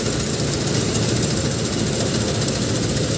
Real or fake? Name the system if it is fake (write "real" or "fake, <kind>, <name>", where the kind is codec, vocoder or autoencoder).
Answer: real